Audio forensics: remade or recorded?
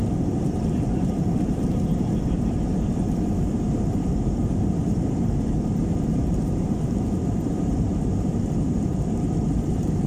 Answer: remade